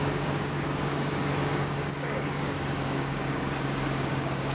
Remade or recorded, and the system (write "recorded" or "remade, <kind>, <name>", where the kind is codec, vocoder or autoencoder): remade, codec, DAC